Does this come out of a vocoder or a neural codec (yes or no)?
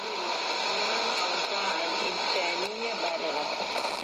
no